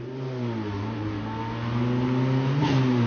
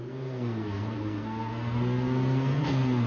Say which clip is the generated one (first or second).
second